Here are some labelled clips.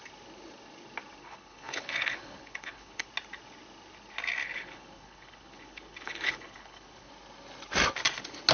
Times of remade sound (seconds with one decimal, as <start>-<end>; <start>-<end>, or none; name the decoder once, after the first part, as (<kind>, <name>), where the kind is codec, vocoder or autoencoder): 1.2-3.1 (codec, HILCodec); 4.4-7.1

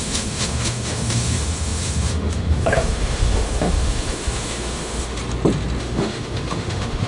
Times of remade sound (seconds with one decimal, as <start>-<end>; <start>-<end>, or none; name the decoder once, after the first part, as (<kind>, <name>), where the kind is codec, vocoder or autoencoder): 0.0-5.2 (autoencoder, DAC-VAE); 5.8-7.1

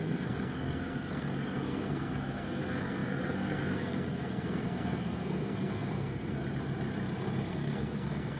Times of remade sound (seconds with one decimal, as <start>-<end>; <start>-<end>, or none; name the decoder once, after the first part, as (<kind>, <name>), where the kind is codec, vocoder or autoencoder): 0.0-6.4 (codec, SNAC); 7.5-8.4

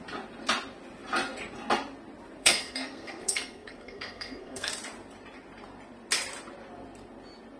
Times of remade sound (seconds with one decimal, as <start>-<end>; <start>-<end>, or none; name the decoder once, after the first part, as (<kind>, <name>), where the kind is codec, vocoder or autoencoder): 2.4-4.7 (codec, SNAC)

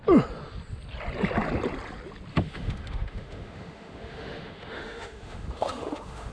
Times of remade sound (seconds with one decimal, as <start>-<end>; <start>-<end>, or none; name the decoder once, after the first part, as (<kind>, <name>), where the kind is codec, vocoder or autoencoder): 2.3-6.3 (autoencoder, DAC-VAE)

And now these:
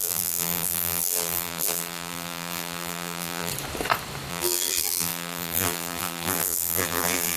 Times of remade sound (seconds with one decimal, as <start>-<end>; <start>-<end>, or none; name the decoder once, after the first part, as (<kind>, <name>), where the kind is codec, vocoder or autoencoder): 0.0-3.5 (vocoder, BigVGAN v2); 4.3-7.4

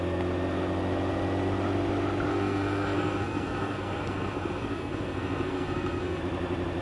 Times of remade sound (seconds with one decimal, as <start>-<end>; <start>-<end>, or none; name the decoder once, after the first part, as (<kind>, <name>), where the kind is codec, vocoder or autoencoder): 2.3-6.2 (codec, SNAC)